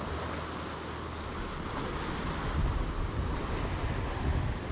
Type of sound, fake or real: real